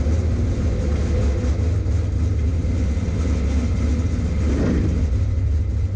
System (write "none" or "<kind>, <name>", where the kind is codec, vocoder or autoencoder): none